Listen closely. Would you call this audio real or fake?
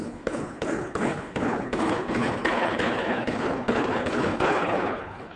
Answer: fake